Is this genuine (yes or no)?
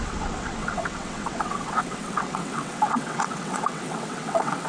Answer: no